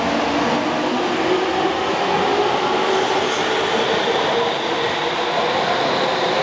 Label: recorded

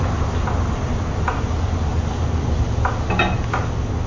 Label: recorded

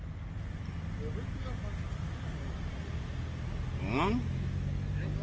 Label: recorded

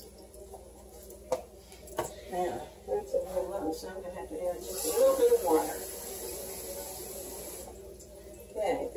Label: recorded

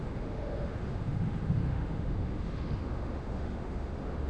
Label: remade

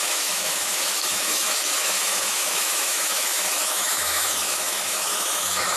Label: remade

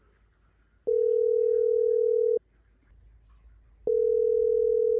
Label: recorded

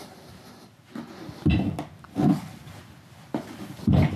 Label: recorded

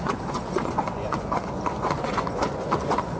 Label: remade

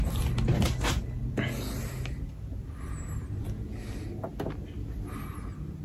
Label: recorded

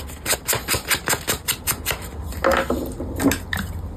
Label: recorded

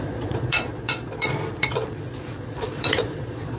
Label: remade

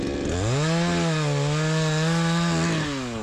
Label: recorded